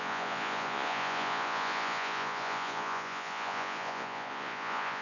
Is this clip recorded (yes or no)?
no